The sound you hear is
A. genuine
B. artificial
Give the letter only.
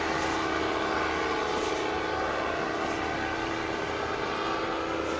A